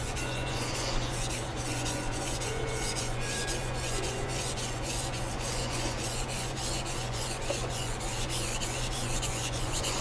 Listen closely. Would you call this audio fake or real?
fake